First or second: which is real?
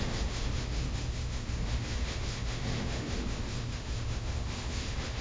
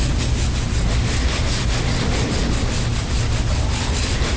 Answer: second